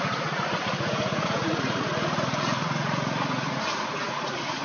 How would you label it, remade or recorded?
remade